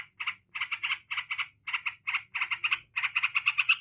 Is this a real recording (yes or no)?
yes